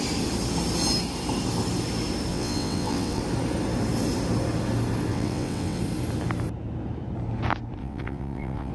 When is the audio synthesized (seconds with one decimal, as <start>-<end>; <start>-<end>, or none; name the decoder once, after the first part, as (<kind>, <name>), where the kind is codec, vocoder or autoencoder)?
2.3-3.2 (vocoder, WaveNeXt); 5.1-5.8; 7.8-8.7